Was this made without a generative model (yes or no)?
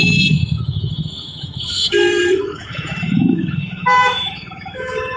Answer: no